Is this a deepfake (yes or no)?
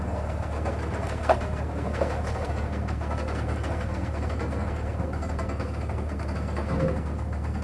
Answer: yes